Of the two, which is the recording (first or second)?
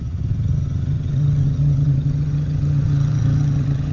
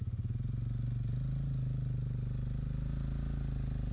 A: second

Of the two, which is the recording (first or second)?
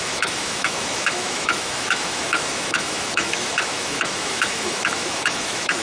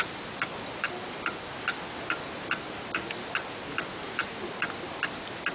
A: second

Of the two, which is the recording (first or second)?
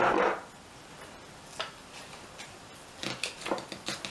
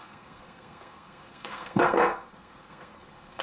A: first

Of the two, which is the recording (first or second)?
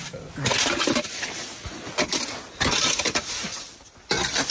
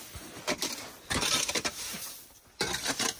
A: first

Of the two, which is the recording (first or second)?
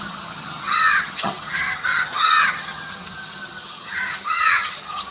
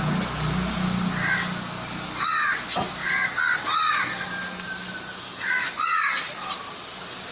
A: second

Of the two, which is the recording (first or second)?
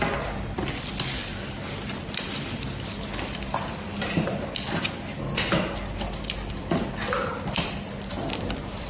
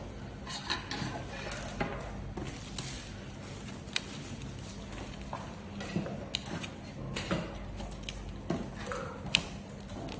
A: second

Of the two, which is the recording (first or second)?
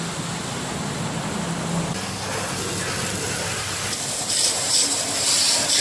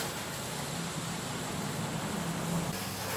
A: second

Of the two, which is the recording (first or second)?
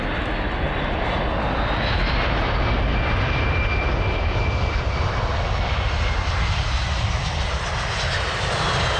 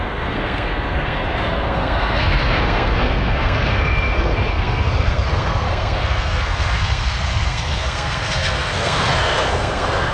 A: first